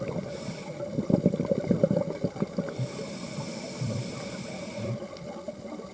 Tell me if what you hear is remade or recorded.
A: remade